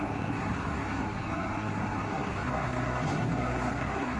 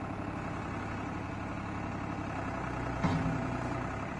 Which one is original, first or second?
second